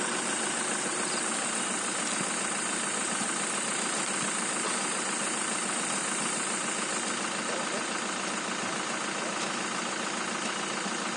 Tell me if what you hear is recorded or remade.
recorded